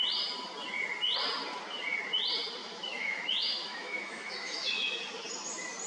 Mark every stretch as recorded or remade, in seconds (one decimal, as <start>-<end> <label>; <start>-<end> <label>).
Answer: 0.0-2.6 recorded; 2.6-5.0 remade; 5.0-5.9 recorded